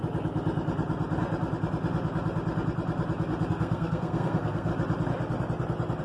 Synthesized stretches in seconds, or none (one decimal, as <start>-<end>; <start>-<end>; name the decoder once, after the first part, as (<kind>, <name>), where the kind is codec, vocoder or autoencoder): 3.5-4.7 (codec, SNAC)

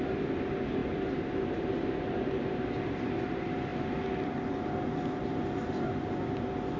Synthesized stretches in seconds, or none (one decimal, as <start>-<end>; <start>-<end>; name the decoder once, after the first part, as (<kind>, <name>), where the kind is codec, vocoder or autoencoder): none

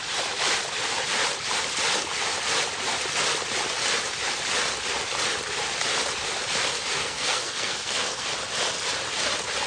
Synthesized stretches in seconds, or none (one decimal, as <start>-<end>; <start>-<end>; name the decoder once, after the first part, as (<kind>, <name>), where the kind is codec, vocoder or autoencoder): 7.0-8.3 (codec, SNAC)

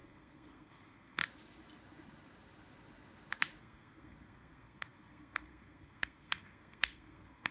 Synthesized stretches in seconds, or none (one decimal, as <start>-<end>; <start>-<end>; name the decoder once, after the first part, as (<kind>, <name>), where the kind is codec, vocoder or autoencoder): 0.0-1.2 (codec, SNAC); 3.6-7.5